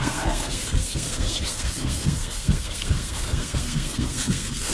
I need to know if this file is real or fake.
fake